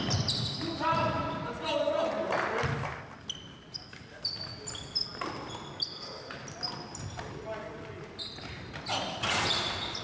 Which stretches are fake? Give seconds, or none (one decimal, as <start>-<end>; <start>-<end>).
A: none